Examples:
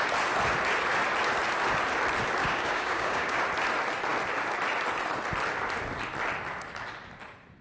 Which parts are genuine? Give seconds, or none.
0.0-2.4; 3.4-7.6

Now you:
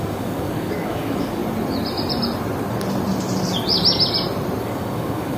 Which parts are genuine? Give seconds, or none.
1.4-4.6

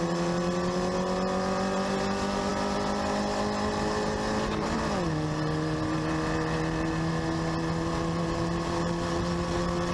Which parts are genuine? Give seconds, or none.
0.0-9.9

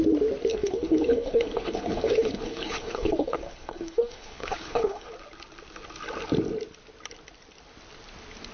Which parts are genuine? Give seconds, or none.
0.0-0.5; 5.1-8.5

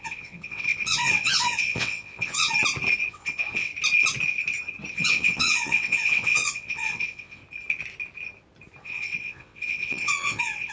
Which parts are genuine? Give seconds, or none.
2.5-3.1; 3.7-4.9; 7.4-8.8